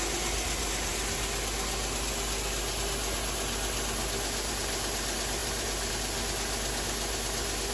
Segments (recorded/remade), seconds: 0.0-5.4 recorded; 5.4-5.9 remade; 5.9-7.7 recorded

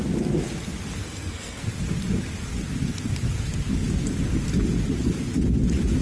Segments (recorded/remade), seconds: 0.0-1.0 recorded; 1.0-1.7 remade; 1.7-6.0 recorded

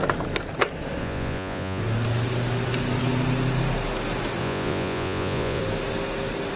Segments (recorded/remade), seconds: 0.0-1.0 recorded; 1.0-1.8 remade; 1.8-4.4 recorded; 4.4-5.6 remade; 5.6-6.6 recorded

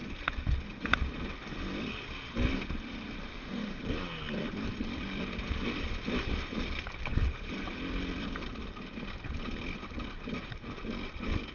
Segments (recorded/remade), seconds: 0.0-3.3 recorded; 3.3-3.8 remade; 3.8-11.5 recorded

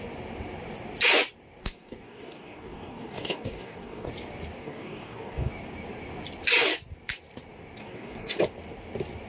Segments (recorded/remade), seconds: 0.0-1.6 recorded; 1.6-4.1 remade; 4.1-4.6 recorded; 4.6-5.5 remade; 5.5-7.8 recorded; 7.8-8.4 remade; 8.4-9.3 recorded

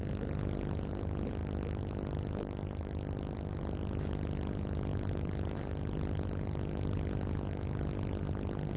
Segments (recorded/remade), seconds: 0.0-1.4 recorded; 1.4-3.6 remade; 3.6-4.9 recorded; 4.9-7.0 remade; 7.0-8.8 recorded